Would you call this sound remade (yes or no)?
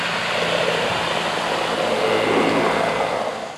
no